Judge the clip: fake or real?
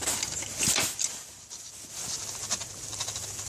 real